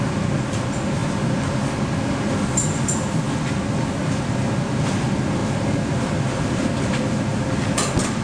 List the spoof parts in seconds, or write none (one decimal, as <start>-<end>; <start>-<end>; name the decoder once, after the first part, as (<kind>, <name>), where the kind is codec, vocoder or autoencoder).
5.4-7.5 (vocoder, BigVGAN v2)